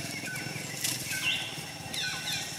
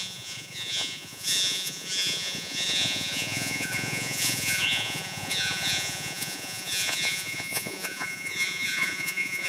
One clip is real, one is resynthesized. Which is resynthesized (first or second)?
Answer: second